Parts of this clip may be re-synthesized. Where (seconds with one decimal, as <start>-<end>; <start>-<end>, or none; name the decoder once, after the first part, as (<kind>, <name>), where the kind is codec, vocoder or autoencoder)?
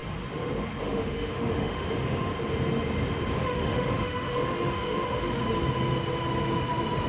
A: 0.8-2.3 (autoencoder, DAC-VAE); 3.3-5.4